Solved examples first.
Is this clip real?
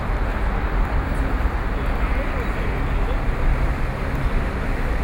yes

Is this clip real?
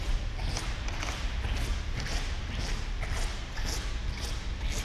yes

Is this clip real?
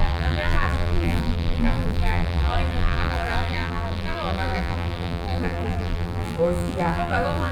no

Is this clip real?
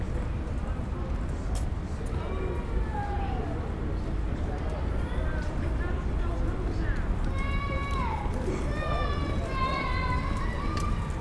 yes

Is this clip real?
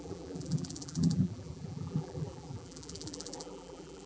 no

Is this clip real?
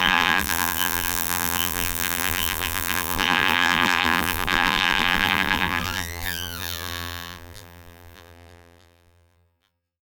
no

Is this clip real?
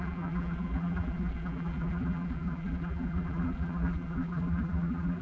no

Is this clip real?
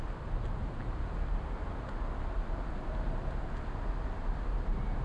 yes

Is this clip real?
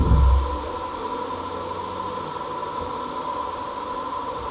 yes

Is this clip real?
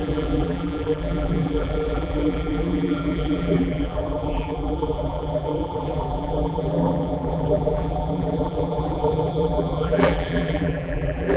no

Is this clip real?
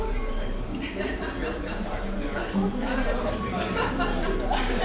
no